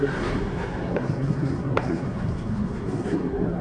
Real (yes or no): no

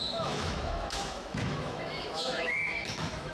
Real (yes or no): no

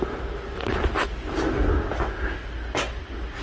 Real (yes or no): yes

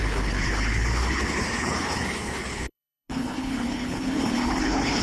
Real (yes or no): no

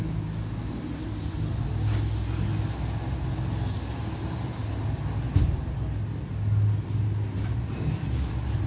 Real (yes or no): yes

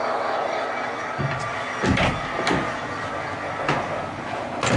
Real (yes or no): yes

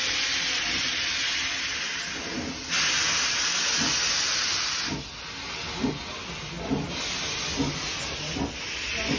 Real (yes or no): yes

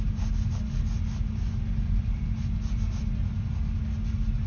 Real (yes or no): yes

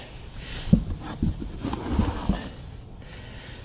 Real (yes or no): yes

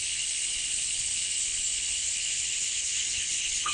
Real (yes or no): no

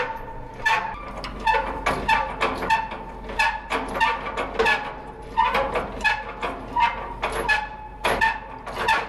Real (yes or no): yes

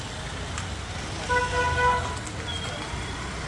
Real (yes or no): yes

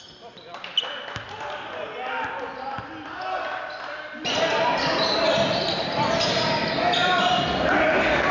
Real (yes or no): yes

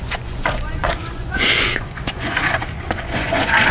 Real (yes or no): no